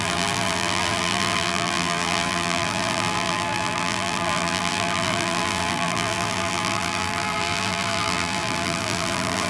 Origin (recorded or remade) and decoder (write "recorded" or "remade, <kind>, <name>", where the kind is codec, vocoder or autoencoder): remade, vocoder, BigVGAN v2